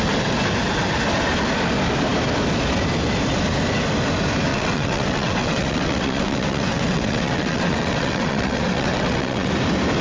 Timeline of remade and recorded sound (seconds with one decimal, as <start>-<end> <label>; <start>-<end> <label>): 0.0-4.5 recorded; 4.5-9.5 remade; 9.5-10.0 recorded